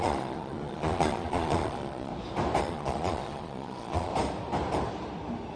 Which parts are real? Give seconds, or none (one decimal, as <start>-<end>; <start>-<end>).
2.1-2.6; 4.1-5.6